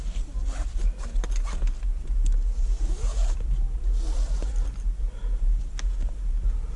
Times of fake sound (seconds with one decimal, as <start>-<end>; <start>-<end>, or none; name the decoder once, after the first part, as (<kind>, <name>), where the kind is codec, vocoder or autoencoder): none